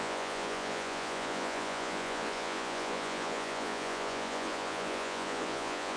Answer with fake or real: fake